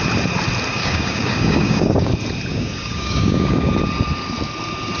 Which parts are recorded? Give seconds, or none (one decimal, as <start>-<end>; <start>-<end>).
0.0-0.7; 2.1-2.5; 3.7-5.0